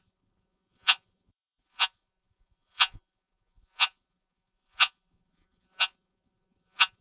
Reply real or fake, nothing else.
fake